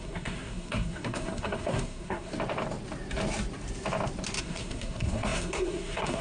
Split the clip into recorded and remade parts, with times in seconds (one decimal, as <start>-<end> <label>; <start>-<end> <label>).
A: 0.0-2.3 remade; 2.3-4.4 recorded; 4.4-6.2 remade